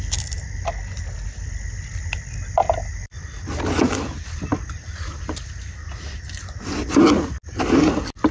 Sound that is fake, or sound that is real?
real